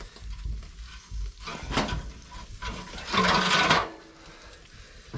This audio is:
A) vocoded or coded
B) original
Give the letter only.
B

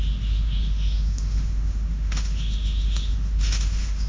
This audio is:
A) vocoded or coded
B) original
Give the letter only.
A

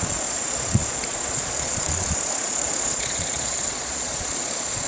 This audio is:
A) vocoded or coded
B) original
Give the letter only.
A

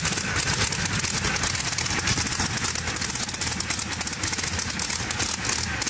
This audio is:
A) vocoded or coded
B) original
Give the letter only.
B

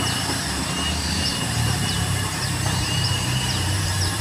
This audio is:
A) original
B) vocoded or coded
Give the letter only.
B